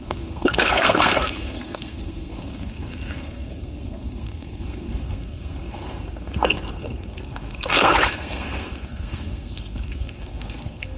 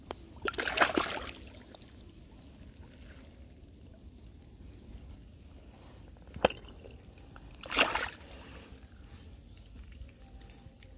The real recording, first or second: second